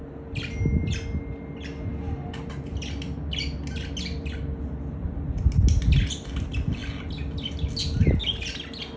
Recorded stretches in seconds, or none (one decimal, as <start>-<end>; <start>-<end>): 0.0-9.0